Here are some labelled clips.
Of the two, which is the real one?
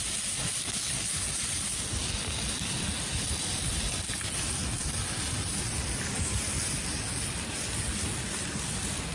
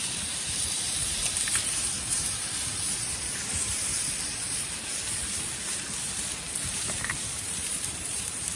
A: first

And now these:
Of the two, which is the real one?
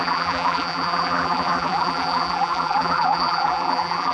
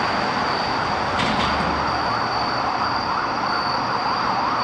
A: second